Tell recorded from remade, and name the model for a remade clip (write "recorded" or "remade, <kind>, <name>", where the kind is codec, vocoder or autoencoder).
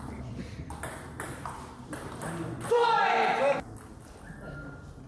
remade, vocoder, BigVGAN v2